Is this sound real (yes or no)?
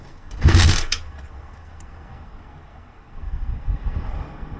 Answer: no